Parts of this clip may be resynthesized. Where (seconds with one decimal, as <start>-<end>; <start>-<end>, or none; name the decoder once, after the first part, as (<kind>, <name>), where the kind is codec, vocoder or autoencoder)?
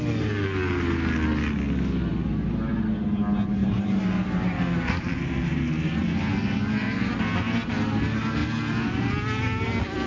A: 3.6-7.1 (vocoder, BigVGAN v2)